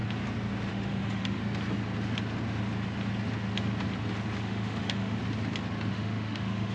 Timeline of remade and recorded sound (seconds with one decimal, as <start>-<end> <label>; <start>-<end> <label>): 0.0-0.7 recorded; 0.7-1.4 remade; 1.4-4.4 recorded; 4.4-5.2 remade; 5.2-5.9 recorded; 5.9-6.7 remade

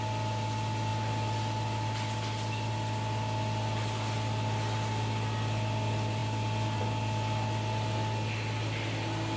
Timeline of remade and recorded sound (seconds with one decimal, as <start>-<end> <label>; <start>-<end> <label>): 0.0-9.4 recorded

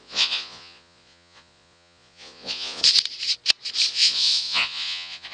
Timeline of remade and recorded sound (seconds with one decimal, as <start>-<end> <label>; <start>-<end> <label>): 0.0-2.8 remade; 2.8-3.9 recorded; 3.9-5.3 remade

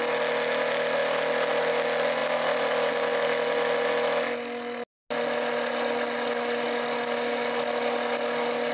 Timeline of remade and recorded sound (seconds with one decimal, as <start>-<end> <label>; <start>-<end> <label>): 0.0-2.2 recorded; 2.2-2.9 remade; 2.9-8.7 recorded

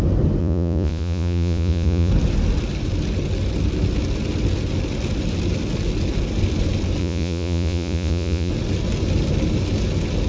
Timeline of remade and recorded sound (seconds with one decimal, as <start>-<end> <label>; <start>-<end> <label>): 0.0-0.4 recorded; 0.4-2.1 remade; 2.1-7.0 recorded; 7.0-8.5 remade; 8.5-10.3 recorded

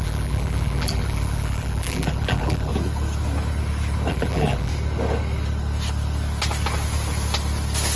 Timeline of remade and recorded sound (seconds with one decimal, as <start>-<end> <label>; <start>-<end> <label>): 0.0-2.7 remade; 2.7-4.1 recorded; 4.1-4.7 remade; 4.7-8.0 recorded